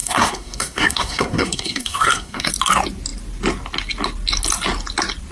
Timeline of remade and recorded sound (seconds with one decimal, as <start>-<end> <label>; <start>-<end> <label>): 0.0-2.5 remade; 2.5-5.3 recorded